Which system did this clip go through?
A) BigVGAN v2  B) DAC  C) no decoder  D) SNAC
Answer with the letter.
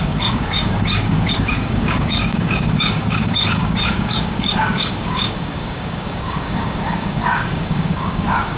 B